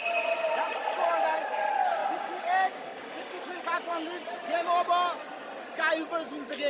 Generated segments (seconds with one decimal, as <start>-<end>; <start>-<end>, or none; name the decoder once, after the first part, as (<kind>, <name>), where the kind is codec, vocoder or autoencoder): 2.0-3.6 (codec, DAC)